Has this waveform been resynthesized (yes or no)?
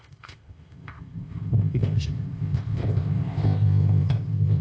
yes